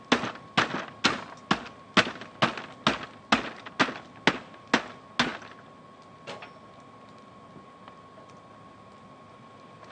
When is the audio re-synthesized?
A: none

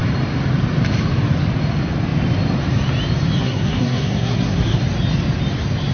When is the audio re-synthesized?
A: 3.4-4.8 (codec, SNAC)

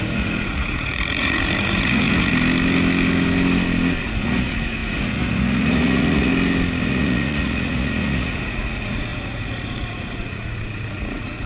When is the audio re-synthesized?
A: 0.0-2.3 (vocoder, Vocos); 4.0-6.3; 6.9-11.5

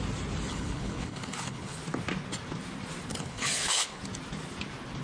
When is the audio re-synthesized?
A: 0.5-1.8 (codec, HILCodec); 3.1-4.0

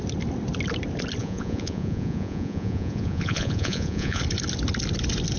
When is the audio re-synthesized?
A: 1.2-4.2 (vocoder, Vocos)